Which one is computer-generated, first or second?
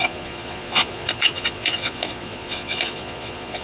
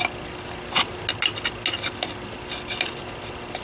first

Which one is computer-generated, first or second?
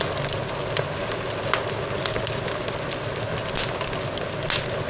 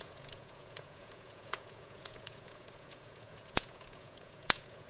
second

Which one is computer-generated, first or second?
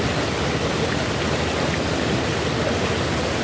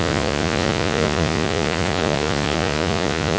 second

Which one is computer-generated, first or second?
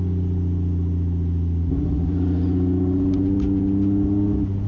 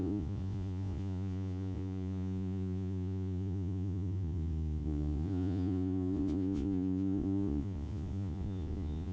second